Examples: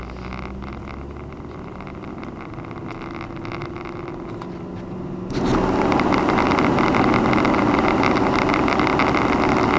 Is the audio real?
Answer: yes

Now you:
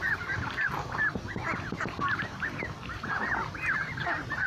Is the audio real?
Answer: yes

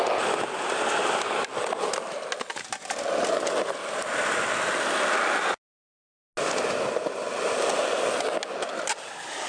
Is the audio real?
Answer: yes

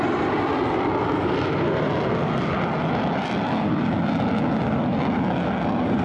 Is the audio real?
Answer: yes